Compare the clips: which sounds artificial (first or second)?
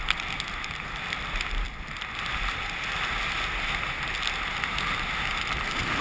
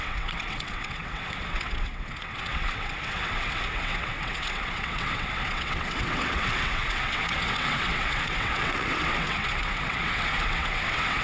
second